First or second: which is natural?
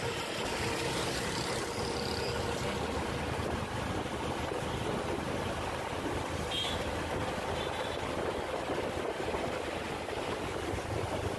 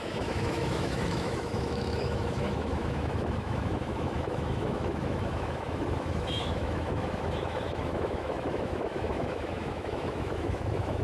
first